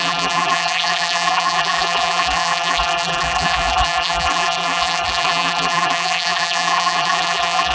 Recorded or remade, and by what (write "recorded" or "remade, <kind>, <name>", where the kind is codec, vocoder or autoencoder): remade, vocoder, BigVGAN v2